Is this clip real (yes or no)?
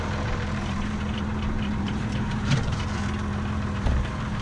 no